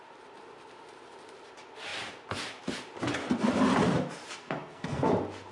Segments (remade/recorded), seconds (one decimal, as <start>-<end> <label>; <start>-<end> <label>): 0.0-4.4 recorded; 4.4-5.1 remade; 5.1-5.5 recorded

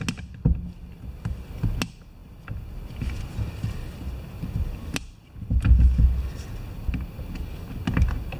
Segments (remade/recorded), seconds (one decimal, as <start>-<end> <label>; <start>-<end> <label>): 0.0-8.4 recorded